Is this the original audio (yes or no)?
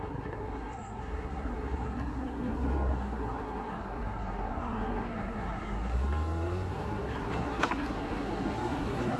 no